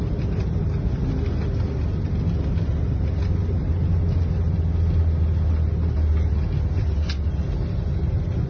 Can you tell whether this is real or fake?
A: real